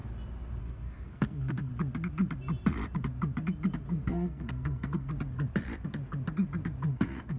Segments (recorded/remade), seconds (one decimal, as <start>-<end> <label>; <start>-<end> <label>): 0.0-0.6 recorded; 0.6-1.7 remade; 1.7-3.9 recorded; 3.9-5.1 remade; 5.1-6.9 recorded; 6.9-7.4 remade